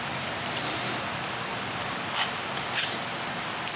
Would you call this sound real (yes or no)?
yes